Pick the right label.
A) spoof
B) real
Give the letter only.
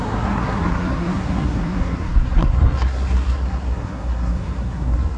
A